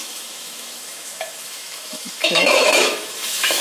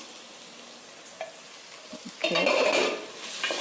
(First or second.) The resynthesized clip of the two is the first